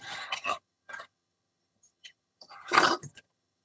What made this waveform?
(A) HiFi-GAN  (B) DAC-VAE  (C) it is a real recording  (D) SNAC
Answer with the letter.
A